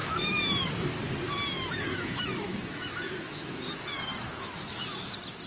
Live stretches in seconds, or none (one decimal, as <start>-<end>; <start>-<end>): 0.9-1.9; 5.1-5.5